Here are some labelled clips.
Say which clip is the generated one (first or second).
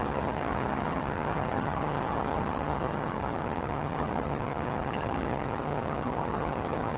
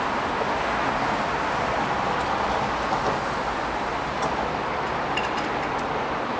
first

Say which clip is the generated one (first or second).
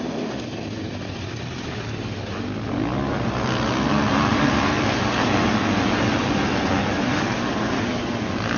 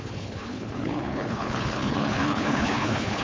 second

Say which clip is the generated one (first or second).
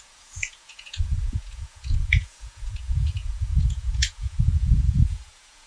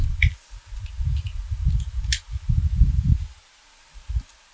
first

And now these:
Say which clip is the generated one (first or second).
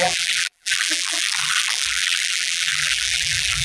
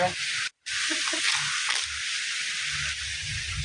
first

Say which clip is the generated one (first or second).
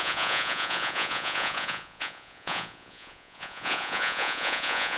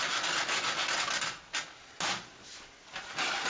first